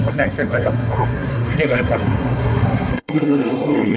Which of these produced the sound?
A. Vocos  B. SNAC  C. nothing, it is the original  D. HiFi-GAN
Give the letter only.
B